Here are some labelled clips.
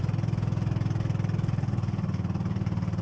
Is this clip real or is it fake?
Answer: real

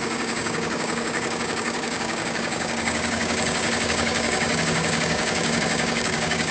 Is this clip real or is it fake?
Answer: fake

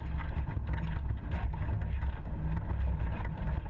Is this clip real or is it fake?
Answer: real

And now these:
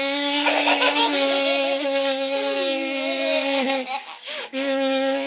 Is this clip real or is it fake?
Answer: fake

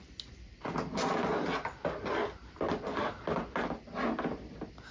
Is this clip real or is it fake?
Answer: real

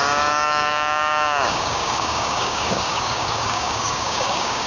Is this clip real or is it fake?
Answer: fake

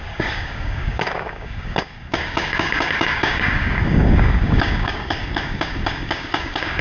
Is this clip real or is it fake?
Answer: fake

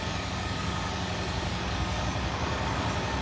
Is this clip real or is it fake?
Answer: fake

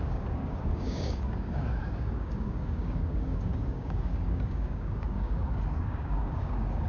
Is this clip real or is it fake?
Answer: fake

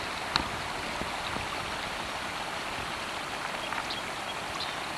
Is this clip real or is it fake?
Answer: real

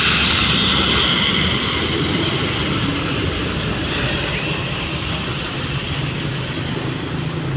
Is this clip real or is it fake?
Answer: real